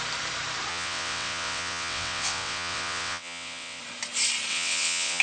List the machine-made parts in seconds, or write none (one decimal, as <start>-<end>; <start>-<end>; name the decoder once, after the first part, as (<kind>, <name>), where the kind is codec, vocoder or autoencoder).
0.7-3.8 (vocoder, WaveNeXt); 4.5-5.2